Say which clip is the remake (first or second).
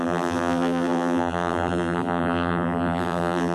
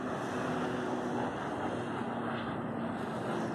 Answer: first